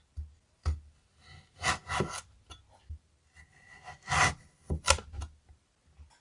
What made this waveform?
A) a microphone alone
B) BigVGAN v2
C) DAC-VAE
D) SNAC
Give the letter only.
A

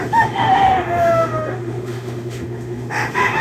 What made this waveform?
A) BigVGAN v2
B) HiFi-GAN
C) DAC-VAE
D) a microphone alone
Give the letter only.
C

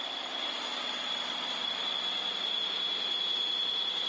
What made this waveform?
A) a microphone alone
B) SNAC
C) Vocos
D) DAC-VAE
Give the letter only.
A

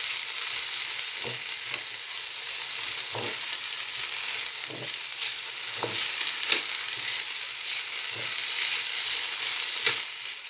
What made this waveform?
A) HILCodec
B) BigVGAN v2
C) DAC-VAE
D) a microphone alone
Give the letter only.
D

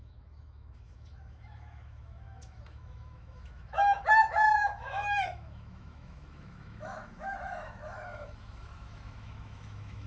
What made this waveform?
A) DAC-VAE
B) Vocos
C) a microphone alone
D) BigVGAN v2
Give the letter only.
A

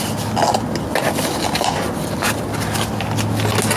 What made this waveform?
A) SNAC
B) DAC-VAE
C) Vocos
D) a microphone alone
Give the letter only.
D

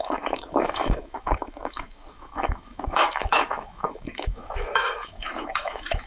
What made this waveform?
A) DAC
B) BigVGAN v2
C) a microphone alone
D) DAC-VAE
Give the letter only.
D